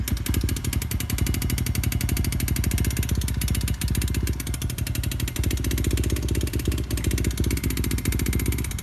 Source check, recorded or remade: recorded